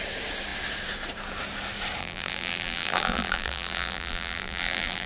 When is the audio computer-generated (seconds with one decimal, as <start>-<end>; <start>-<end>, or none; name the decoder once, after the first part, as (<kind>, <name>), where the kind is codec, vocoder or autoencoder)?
2.0-5.1 (vocoder, BigVGAN v2)